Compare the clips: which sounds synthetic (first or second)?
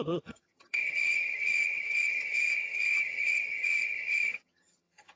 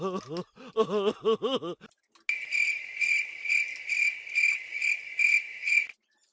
first